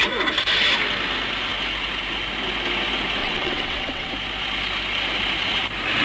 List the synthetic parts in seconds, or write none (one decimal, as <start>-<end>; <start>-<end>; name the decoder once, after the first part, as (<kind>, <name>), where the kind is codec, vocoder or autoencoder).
3.2-4.1 (vocoder, WaveNeXt)